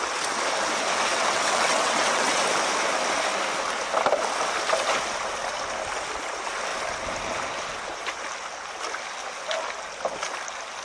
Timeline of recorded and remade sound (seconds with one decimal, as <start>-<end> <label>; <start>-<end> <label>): 0.0-1.1 recorded; 1.1-2.4 remade; 2.4-10.8 recorded